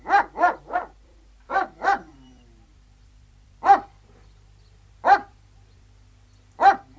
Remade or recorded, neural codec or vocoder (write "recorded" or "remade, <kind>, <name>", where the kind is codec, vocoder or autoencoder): remade, vocoder, BigVGAN v2